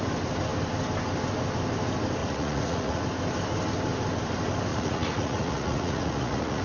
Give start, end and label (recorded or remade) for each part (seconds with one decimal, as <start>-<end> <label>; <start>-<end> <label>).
0.0-2.2 recorded; 2.2-3.0 remade; 3.0-4.7 recorded; 4.7-6.6 remade